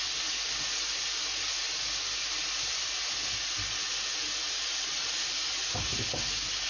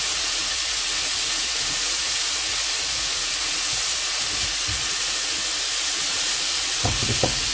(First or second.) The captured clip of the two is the first